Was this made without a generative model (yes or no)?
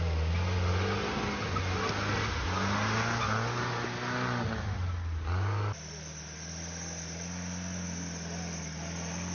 yes